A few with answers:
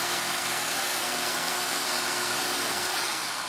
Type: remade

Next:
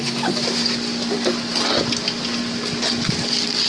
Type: recorded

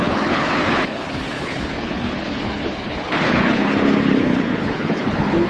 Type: remade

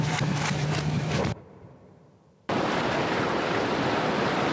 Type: remade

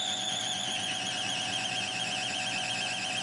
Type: remade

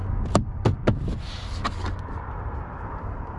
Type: recorded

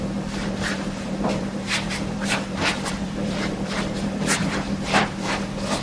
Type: remade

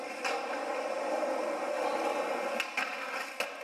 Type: recorded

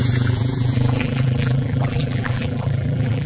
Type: remade